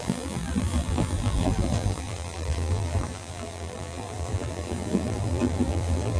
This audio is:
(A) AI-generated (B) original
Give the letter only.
A